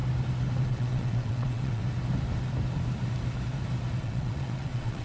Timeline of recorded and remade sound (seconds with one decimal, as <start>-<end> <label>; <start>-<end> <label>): 0.0-0.6 recorded; 0.6-1.8 remade; 1.8-4.0 recorded; 4.0-5.0 remade